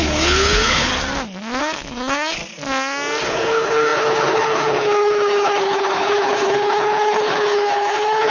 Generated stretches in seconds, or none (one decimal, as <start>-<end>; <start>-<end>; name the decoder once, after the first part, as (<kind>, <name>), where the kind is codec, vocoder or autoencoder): 0.0-0.9 (codec, HILCodec); 1.6-2.4; 3.2-8.3